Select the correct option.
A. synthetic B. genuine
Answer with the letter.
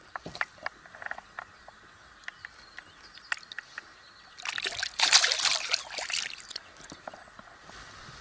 B